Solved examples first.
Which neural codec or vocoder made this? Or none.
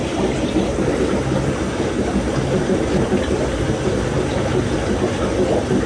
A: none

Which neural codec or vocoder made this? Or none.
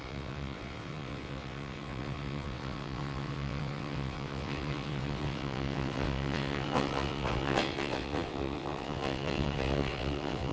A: vocoder, WaveNeXt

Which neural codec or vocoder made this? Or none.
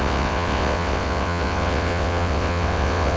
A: vocoder, WaveNeXt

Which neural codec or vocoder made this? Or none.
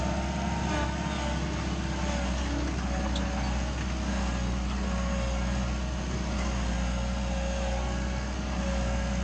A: none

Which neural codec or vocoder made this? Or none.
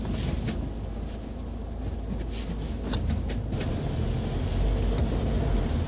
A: none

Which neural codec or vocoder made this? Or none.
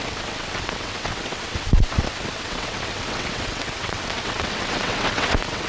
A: vocoder, WaveNeXt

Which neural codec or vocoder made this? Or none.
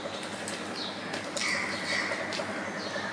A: none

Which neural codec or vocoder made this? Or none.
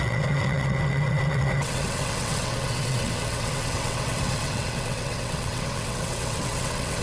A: vocoder, WaveNeXt